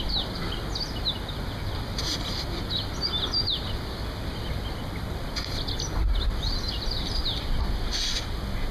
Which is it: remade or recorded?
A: recorded